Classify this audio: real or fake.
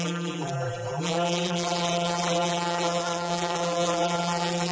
fake